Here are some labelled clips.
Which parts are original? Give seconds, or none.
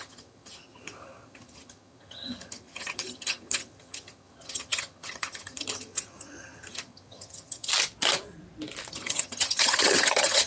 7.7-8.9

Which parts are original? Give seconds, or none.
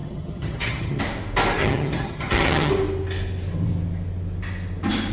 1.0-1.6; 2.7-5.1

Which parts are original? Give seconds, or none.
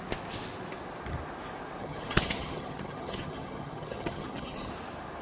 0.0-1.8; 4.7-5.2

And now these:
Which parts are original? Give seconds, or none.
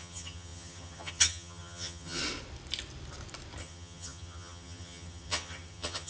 2.2-3.6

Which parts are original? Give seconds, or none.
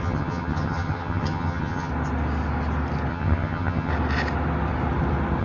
1.9-3.1; 3.9-5.4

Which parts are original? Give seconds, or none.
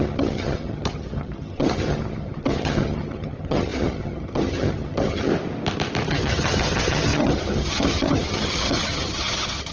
5.3-6.1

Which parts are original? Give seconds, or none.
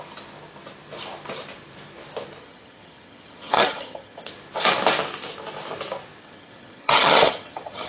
0.0-2.4; 4.3-6.2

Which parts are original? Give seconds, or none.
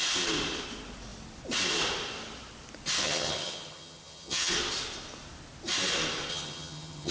0.0-3.0; 4.5-6.3